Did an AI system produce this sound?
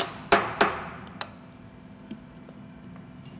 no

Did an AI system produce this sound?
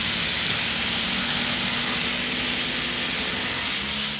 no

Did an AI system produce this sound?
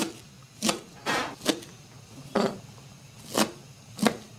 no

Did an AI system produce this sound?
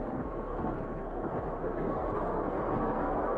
yes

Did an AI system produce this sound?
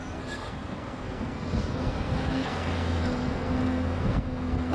yes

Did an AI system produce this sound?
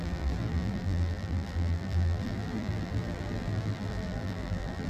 yes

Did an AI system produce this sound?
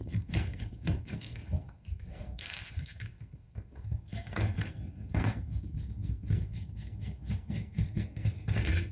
yes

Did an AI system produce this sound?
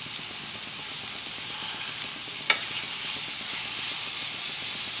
yes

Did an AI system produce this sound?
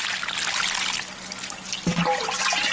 no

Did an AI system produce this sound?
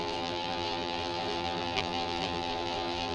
yes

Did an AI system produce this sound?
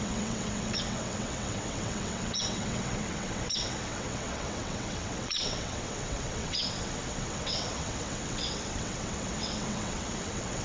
yes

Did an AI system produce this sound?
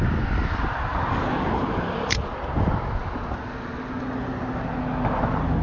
no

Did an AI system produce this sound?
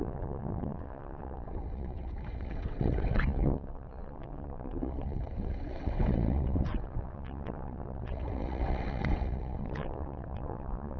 yes